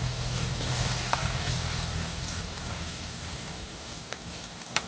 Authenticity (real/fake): fake